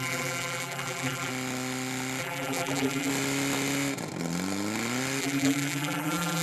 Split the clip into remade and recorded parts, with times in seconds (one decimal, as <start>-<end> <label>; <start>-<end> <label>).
0.0-1.3 remade; 1.3-2.2 recorded; 2.2-3.1 remade; 3.1-5.2 recorded; 5.2-6.4 remade